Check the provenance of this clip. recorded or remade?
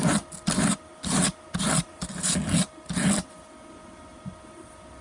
recorded